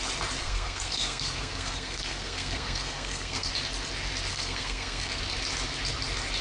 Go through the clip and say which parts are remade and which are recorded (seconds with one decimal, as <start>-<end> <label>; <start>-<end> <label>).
0.0-0.4 recorded; 0.4-3.5 remade; 3.5-4.3 recorded; 4.3-5.2 remade; 5.2-6.4 recorded